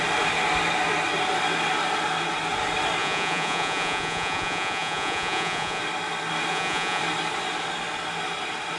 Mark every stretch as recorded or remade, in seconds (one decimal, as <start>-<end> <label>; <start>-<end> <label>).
0.0-3.0 recorded; 3.0-5.8 remade; 5.8-6.5 recorded; 6.5-7.0 remade; 7.0-8.8 recorded